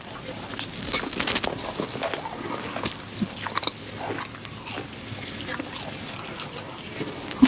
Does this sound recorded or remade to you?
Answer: recorded